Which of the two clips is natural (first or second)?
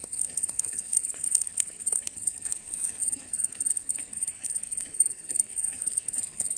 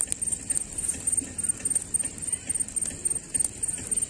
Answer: second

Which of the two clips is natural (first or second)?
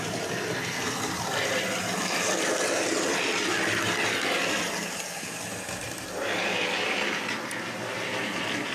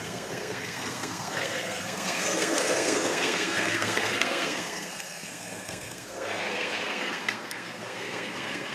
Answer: first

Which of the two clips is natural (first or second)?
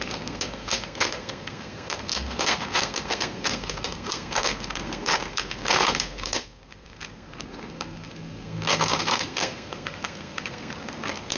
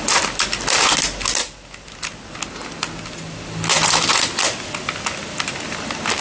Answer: second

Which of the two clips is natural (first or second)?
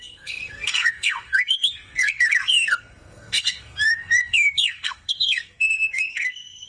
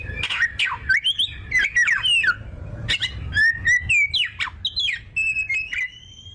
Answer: second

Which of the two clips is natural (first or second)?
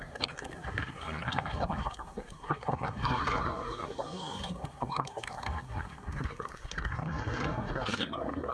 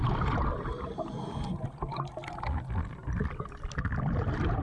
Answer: second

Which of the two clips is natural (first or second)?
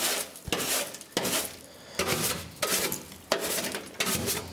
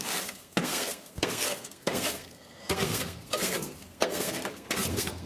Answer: first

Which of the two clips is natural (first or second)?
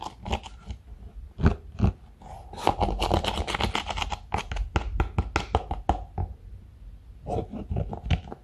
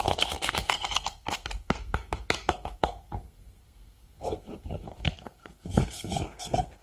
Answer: first